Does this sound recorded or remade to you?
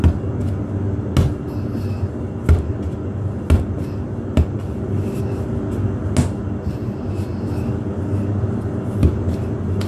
recorded